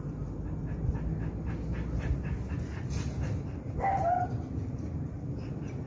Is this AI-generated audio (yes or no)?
no